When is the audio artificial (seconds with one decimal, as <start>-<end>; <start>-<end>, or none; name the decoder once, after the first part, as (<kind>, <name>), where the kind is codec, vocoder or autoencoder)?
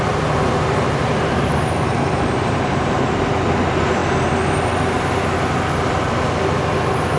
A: 1.0-3.1 (vocoder, BigVGAN v2)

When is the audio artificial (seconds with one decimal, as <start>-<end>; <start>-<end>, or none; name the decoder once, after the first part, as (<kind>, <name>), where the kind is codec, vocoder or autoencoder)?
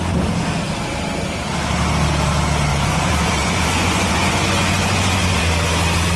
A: 2.7-5.4 (vocoder, Vocos)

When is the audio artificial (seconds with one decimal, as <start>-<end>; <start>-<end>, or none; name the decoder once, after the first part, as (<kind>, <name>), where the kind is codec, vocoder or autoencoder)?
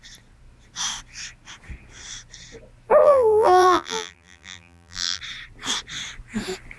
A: 3.0-5.2 (vocoder, BigVGAN v2)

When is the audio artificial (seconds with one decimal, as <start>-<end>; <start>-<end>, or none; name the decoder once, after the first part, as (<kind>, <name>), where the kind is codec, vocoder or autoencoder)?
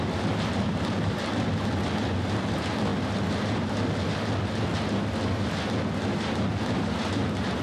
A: none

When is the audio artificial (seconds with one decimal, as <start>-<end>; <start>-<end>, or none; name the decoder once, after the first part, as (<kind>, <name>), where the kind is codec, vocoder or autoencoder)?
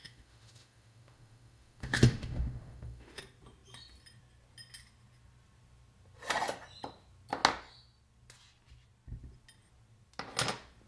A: 0.0-3.2 (autoencoder, DAC-VAE)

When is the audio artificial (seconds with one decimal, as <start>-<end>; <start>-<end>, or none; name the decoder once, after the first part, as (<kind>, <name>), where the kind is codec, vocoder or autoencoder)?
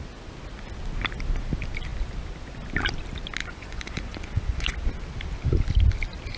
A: 3.4-4.7 (vocoder, Vocos)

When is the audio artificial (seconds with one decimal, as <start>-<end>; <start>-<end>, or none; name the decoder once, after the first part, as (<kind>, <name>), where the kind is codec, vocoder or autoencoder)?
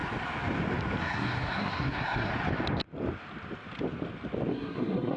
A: 1.0-2.3 (codec, SNAC); 4.5-5.2